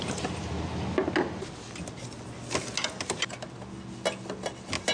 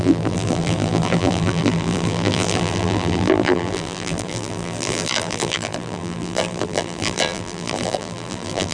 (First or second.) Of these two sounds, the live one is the first